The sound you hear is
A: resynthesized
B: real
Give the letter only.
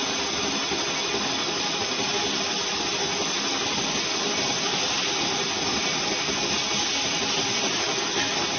B